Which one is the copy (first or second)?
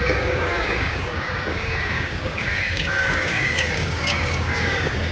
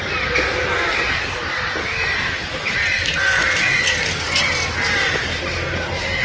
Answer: first